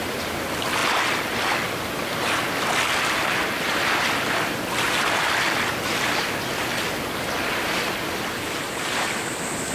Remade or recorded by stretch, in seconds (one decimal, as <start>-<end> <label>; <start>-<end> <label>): 0.0-9.7 recorded

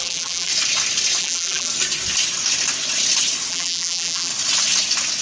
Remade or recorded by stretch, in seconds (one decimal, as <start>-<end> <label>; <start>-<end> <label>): 0.0-0.5 remade; 0.5-1.2 recorded; 1.2-1.7 remade; 1.7-3.5 recorded; 3.5-4.3 remade; 4.3-5.2 recorded

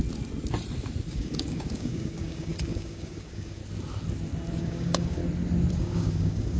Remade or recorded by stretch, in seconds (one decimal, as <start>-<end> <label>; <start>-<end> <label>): 0.0-1.1 recorded; 1.1-3.6 remade; 3.6-4.6 recorded; 4.6-5.2 remade; 5.2-5.7 recorded; 5.7-6.6 remade

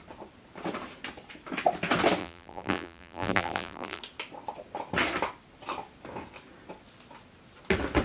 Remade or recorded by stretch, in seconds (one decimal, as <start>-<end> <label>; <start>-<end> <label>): 0.0-2.2 recorded; 2.2-4.0 remade; 4.0-8.0 recorded

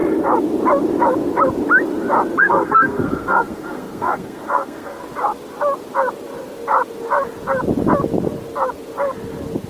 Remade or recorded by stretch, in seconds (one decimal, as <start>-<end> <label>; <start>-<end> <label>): 0.0-2.4 recorded; 2.4-5.0 remade; 5.0-9.7 recorded

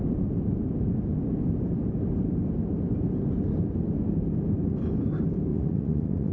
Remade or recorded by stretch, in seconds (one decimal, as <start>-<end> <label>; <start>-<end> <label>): 0.0-5.5 recorded; 5.5-6.3 remade

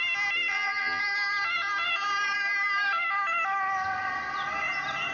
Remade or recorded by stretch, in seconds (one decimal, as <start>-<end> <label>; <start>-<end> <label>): 0.0-0.5 recorded; 0.5-1.0 remade; 1.0-5.1 recorded

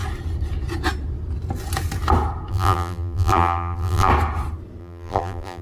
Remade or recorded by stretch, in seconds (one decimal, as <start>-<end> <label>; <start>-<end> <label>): 0.0-2.5 recorded; 2.5-4.1 remade; 4.1-4.8 recorded; 4.8-5.6 remade